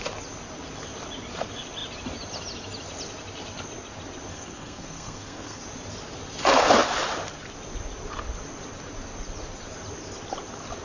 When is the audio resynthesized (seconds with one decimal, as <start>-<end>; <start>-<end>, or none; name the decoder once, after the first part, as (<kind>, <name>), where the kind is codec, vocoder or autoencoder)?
4.3-5.6 (codec, SNAC)